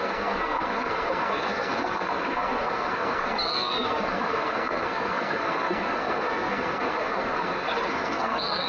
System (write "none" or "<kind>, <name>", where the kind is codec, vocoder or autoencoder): codec, SNAC